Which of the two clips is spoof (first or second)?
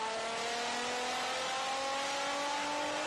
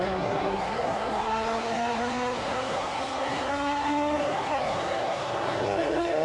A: second